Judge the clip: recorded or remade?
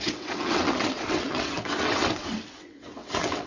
remade